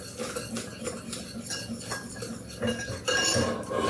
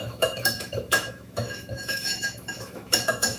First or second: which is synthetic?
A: second